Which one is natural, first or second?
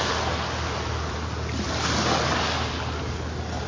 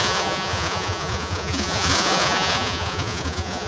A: first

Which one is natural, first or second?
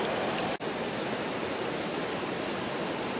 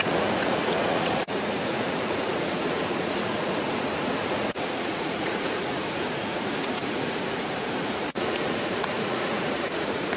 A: first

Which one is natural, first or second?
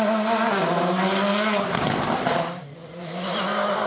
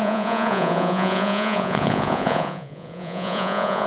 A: first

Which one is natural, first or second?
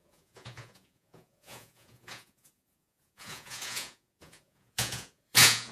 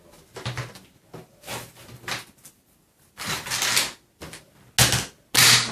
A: second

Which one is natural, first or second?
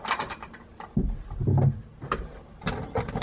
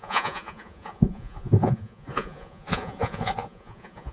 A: first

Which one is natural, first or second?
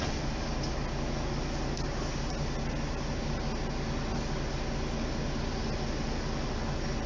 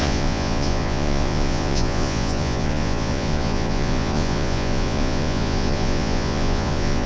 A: first